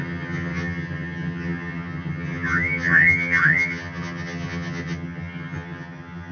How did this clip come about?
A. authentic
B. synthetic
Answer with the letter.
B